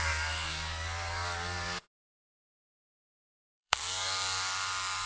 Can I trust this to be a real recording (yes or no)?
no